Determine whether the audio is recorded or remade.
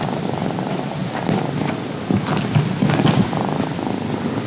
recorded